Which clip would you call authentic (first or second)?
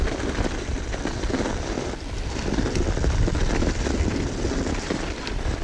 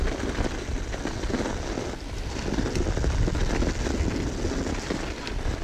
second